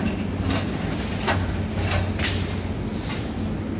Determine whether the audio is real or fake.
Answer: real